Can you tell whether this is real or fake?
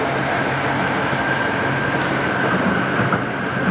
real